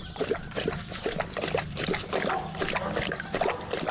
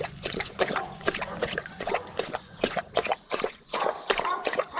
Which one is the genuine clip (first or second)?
first